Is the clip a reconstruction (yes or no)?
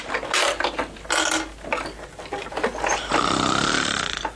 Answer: no